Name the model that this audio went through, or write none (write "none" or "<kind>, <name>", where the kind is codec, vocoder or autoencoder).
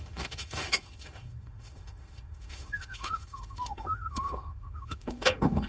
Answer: autoencoder, DAC-VAE